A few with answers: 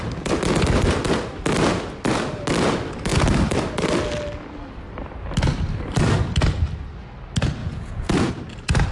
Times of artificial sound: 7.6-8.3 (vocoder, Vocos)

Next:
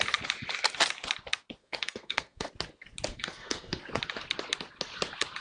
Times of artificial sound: 1.6-2.5 (codec, SNAC); 3.1-3.8

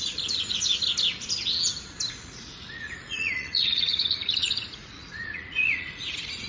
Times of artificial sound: 0.0-0.7 (vocoder, Vocos); 2.1-6.5